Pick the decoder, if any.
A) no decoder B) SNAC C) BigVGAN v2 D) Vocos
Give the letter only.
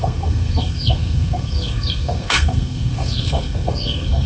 B